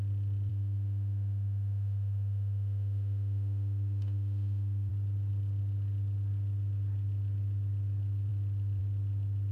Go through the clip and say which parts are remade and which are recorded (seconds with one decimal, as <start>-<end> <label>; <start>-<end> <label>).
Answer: 0.0-0.5 recorded; 0.5-4.9 remade; 4.9-9.5 recorded

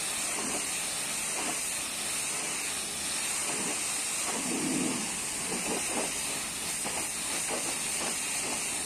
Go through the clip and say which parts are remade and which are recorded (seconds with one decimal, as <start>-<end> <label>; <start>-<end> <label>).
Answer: 0.0-8.9 recorded

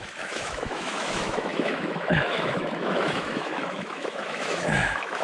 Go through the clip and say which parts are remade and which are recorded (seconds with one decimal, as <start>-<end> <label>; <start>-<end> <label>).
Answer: 0.0-5.2 remade

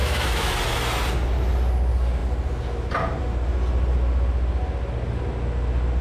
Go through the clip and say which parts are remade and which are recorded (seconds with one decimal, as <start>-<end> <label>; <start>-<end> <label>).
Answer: 0.0-0.5 remade; 0.5-6.0 recorded

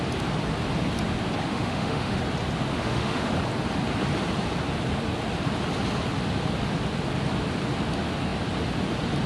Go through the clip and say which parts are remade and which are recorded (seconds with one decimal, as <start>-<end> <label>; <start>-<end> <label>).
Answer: 0.0-1.5 recorded; 1.5-2.2 remade; 2.2-2.7 recorded; 2.7-3.3 remade; 3.3-9.3 recorded

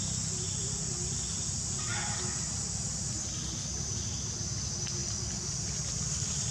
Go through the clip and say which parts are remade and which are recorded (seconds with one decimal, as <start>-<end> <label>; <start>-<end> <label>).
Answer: 0.0-6.5 recorded

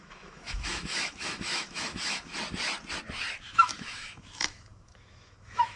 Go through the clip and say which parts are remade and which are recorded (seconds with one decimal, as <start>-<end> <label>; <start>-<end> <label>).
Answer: 0.0-2.3 remade; 2.3-3.4 recorded; 3.4-5.8 remade